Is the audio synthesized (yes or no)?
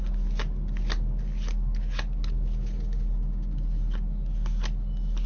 no